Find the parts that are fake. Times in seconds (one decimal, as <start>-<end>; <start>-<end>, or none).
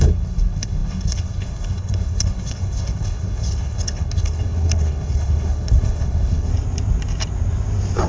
0.0-6.5